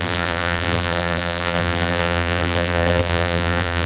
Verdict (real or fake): fake